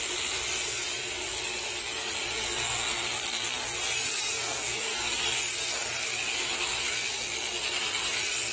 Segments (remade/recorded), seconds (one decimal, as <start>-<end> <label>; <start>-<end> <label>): 0.0-4.1 recorded; 4.1-5.0 remade; 5.0-8.5 recorded